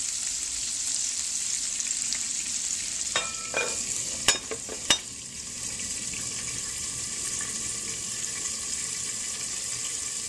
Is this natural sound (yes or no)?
no